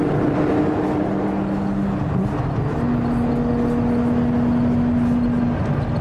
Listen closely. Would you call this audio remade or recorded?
recorded